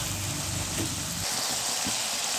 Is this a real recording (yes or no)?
yes